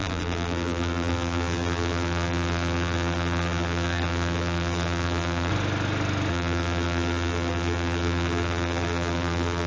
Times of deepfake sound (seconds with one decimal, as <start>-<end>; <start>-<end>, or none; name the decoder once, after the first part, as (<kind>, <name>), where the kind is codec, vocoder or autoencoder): 0.0-5.5 (vocoder, BigVGAN v2); 6.3-9.7